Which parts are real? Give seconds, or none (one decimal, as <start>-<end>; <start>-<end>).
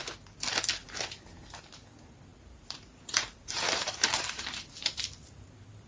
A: 0.0-2.3